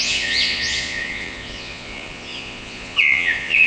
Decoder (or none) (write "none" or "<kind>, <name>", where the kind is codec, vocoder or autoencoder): vocoder, Vocos